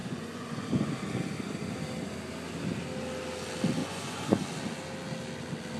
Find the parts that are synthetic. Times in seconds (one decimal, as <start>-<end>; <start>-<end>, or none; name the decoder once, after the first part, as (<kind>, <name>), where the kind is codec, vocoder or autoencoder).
0.0-0.9 (vocoder, Vocos); 3.8-4.4